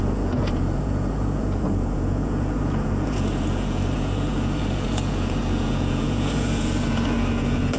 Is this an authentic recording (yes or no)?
no